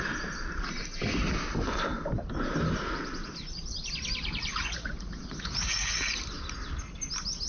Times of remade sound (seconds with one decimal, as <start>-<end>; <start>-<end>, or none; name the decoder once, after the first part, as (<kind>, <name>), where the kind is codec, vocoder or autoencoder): 4.5-6.2 (vocoder, Vocos)